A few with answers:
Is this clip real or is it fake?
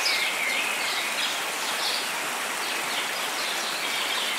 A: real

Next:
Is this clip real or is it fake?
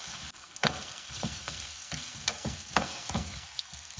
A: fake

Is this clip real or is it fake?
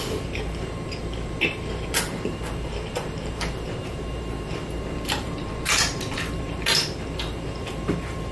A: fake